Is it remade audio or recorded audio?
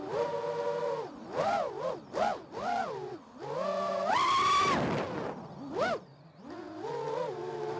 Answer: recorded